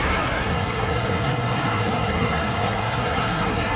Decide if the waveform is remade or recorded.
remade